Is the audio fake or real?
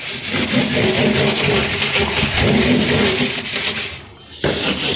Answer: real